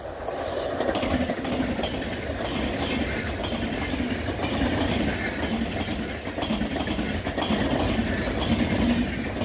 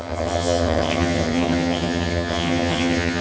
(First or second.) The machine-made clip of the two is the second